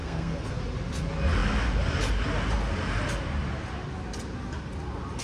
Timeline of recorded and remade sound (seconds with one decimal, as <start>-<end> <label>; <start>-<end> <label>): 0.0-0.6 remade; 0.6-5.2 recorded